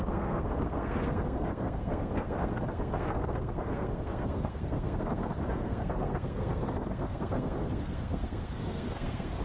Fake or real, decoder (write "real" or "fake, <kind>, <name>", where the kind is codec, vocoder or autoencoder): fake, codec, SNAC